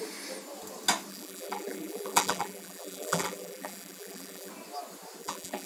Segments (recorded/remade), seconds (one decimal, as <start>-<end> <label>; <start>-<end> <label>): 0.0-1.1 recorded; 1.1-4.5 remade; 4.5-5.2 recorded; 5.2-5.7 remade